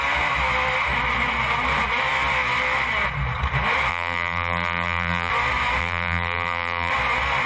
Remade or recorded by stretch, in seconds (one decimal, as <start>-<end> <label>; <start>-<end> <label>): 0.0-3.9 recorded; 3.9-5.3 remade; 5.3-5.8 recorded; 5.8-6.9 remade; 6.9-7.5 recorded